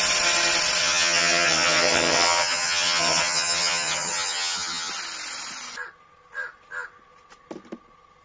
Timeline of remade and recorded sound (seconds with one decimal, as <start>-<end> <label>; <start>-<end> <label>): 0.0-0.8 recorded; 0.8-4.9 remade; 4.9-8.2 recorded